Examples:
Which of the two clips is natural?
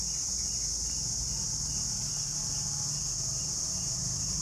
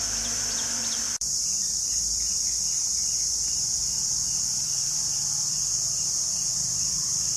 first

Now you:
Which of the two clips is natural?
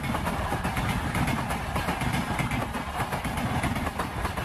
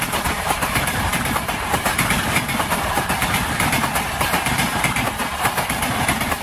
first